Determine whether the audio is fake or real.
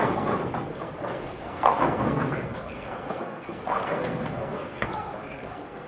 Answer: fake